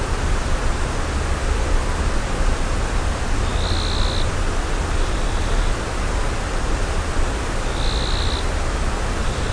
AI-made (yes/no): no